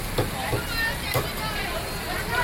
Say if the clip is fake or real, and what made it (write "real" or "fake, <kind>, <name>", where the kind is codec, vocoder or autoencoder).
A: real